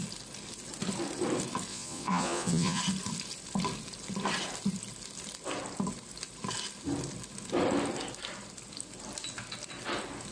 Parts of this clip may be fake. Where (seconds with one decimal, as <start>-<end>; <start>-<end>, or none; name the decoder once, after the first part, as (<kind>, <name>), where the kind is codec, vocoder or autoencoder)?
1.7-2.8 (vocoder, Vocos)